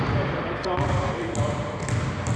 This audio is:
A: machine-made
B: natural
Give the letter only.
B